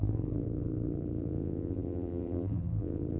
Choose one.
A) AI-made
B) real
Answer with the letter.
A